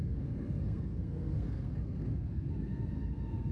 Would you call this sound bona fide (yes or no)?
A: no